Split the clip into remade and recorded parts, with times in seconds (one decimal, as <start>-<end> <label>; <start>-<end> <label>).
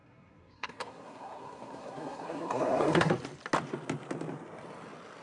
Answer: 0.0-3.1 remade; 3.1-5.2 recorded